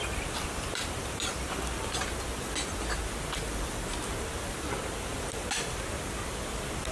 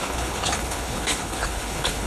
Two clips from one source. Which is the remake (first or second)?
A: second